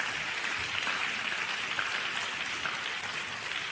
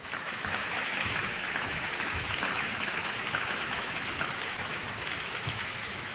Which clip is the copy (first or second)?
second